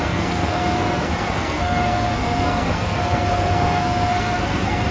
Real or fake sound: fake